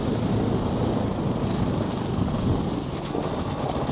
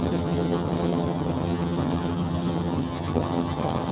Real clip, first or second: first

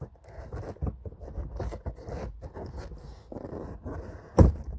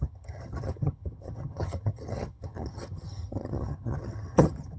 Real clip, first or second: first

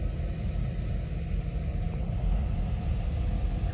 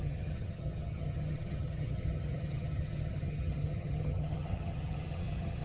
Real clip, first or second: first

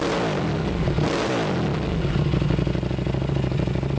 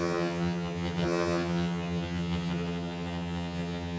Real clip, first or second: first